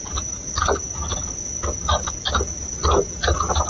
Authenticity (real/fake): real